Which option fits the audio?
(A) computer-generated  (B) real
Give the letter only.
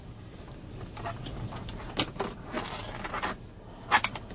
B